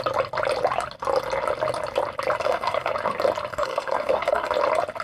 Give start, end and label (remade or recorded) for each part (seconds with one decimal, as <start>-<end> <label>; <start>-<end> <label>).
0.0-2.4 recorded; 2.4-2.9 remade; 2.9-3.5 recorded; 3.5-4.5 remade; 4.5-5.0 recorded